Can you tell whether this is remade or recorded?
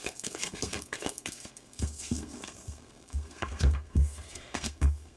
remade